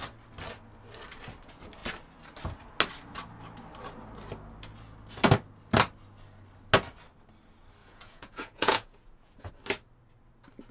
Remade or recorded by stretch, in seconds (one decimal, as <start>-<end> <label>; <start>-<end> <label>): 0.0-7.8 recorded; 7.8-9.5 remade; 9.5-10.7 recorded